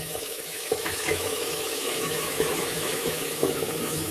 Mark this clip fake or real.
fake